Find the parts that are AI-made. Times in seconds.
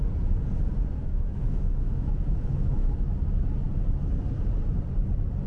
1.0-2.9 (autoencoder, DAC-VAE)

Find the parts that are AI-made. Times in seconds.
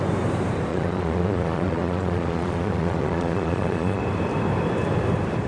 0.7-4.0 (vocoder, Vocos)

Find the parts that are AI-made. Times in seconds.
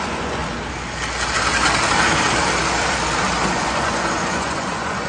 0.0-0.4 (vocoder, Vocos); 3.5-5.1